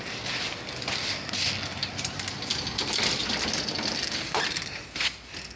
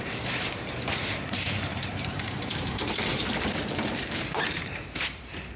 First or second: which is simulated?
second